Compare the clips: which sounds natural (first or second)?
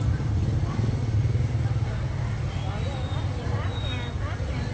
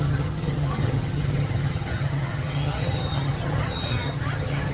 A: first